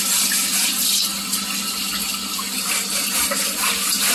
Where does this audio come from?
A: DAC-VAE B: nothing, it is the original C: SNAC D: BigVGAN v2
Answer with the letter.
B